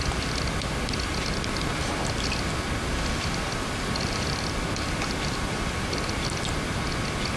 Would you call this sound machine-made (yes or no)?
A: no